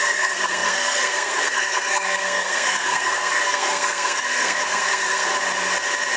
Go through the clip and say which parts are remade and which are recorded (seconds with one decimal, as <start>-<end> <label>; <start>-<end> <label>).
0.0-5.3 remade; 5.3-6.2 recorded